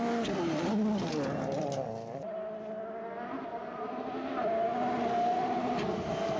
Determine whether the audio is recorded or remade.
recorded